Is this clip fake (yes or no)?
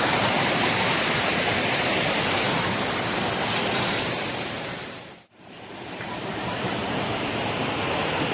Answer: yes